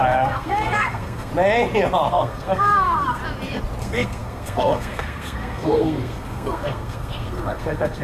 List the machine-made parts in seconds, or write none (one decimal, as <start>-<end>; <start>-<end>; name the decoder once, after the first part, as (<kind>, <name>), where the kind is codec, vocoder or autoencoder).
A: 0.0-1.3 (codec, SNAC); 2.1-3.2; 3.8-8.0